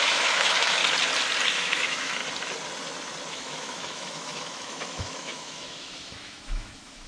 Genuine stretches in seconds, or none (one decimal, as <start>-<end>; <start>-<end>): 0.8-1.5; 2.2-3.3